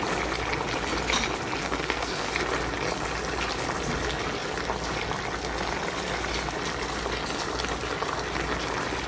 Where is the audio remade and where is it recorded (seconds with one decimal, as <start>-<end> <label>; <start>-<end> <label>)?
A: 0.0-1.6 recorded; 1.6-2.3 remade; 2.3-9.1 recorded